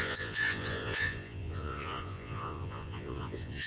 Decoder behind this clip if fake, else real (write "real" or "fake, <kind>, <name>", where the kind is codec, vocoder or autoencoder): fake, vocoder, Vocos